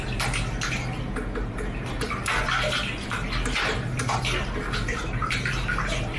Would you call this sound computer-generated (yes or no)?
no